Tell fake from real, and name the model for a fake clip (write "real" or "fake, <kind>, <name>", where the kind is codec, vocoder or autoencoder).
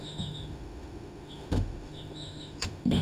fake, autoencoder, DAC-VAE